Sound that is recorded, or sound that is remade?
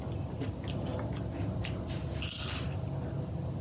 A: recorded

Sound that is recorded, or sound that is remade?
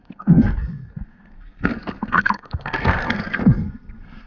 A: remade